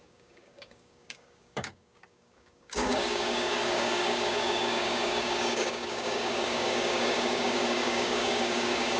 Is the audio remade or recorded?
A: remade